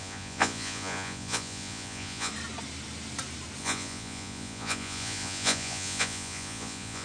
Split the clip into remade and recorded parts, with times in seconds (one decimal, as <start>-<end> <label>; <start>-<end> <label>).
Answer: 0.0-2.3 remade; 2.3-3.6 recorded; 3.6-7.0 remade